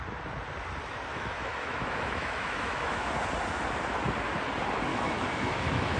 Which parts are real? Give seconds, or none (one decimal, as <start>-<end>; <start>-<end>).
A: 0.0-1.1; 3.1-4.9